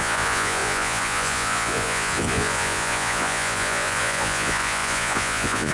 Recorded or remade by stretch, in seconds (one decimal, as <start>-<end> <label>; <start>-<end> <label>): 0.0-5.7 remade